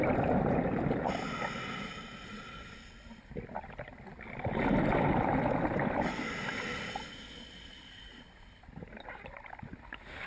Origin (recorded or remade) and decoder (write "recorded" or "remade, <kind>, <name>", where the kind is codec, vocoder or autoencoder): recorded